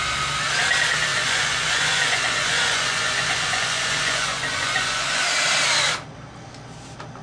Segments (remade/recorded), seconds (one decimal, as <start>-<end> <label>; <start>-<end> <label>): 0.0-1.1 recorded; 1.1-5.2 remade; 5.2-7.2 recorded